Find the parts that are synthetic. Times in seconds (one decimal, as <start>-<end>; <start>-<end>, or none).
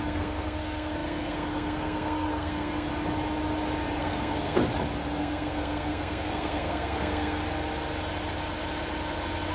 0.0-2.9; 4.0-4.6; 5.2-7.4